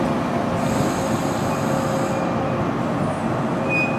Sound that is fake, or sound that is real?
real